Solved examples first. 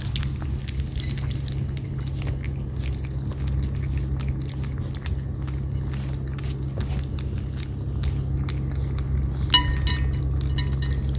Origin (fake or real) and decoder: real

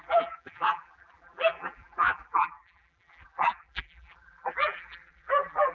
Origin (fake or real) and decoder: fake, vocoder, BigVGAN v2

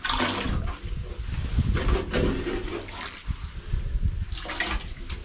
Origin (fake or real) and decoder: real